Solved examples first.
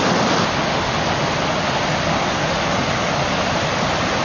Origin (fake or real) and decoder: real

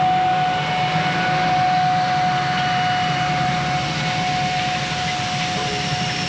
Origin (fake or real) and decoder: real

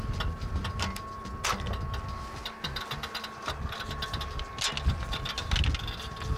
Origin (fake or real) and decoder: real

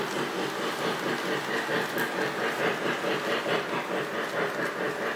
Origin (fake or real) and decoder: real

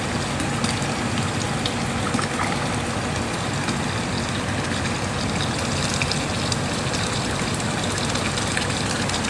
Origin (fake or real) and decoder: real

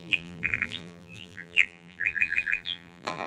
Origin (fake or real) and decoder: fake, vocoder, BigVGAN v2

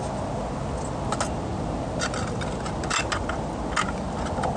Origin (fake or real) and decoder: real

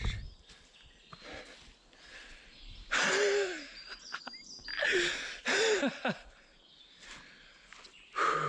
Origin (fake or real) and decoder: real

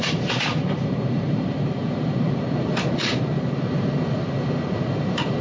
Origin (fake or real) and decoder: fake, vocoder, BigVGAN v2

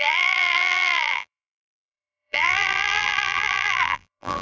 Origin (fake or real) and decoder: fake, vocoder, BigVGAN v2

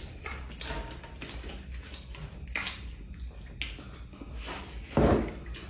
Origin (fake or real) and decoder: real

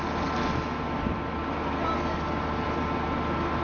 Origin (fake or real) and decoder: real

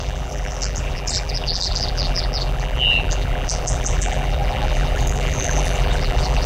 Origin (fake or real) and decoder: fake, vocoder, BigVGAN v2